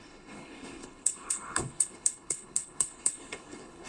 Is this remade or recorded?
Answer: remade